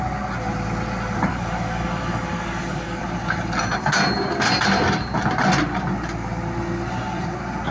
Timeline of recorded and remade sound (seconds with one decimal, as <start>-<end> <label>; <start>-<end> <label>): 0.0-1.3 recorded; 1.3-3.0 remade; 3.0-7.7 recorded